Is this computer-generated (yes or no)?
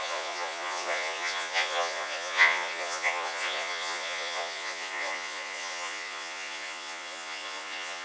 yes